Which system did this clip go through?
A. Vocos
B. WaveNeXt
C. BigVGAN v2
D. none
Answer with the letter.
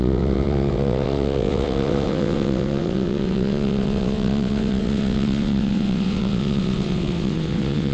B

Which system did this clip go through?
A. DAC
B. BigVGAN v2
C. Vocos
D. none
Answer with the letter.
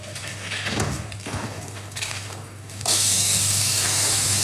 A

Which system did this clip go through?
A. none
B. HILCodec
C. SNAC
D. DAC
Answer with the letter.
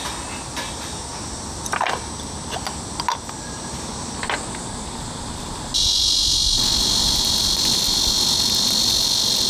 A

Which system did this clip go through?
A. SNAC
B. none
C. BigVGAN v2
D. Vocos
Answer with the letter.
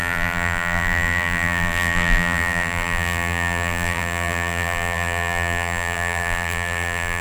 C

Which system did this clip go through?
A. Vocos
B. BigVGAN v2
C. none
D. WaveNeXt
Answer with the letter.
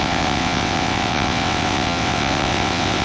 D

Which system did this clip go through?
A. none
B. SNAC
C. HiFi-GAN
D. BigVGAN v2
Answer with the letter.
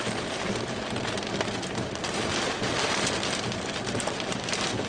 A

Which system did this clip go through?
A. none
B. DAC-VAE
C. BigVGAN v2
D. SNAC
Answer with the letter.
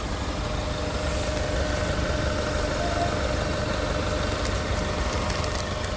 A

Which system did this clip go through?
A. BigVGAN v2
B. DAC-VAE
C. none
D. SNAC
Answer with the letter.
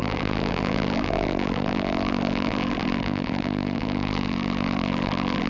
A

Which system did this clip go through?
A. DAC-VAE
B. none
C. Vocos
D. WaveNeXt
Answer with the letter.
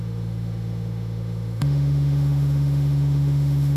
A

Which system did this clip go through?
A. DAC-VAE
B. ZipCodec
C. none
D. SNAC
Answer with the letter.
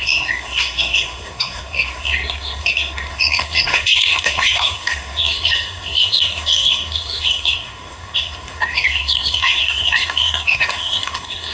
D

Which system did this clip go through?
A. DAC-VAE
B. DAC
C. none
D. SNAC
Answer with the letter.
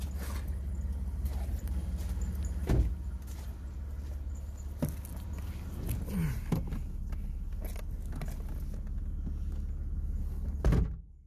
C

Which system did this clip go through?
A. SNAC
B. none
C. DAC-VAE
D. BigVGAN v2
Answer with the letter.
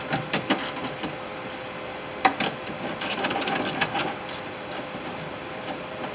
B